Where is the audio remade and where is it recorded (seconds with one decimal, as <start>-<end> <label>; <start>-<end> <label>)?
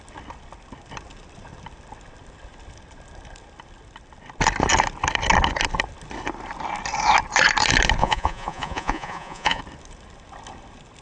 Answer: 0.0-8.0 recorded; 8.0-9.6 remade; 9.6-11.0 recorded